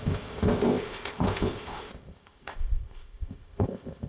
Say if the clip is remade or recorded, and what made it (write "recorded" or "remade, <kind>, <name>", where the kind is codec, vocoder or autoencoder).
remade, codec, ZipCodec